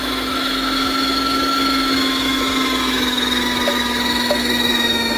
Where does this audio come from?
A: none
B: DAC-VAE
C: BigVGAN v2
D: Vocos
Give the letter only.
B